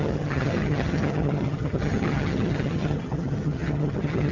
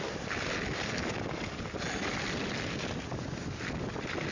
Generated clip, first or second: first